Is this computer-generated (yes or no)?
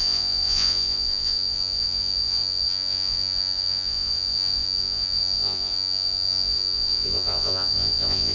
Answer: yes